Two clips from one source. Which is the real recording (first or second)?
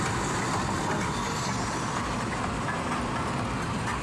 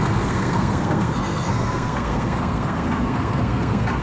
first